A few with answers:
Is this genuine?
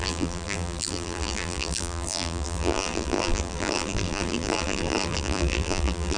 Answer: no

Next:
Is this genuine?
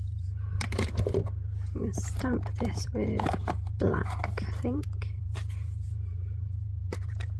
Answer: no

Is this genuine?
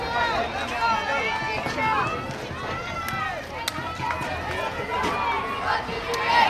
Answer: yes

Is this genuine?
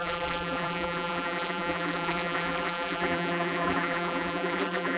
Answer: no